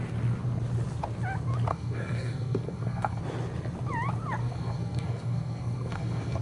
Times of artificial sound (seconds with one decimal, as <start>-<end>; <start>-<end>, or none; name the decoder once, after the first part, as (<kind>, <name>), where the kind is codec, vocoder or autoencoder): 1.7-3.2 (codec, SNAC); 4.4-6.4